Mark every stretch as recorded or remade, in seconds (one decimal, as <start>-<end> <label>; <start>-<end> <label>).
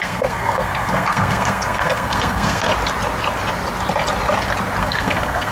0.0-2.7 remade; 2.7-4.8 recorded; 4.8-5.5 remade